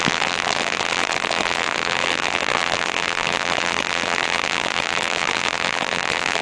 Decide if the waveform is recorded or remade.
remade